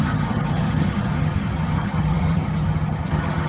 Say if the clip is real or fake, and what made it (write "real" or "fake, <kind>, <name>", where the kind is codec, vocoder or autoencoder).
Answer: fake, vocoder, HiFi-GAN